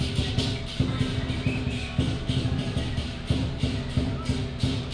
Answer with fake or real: real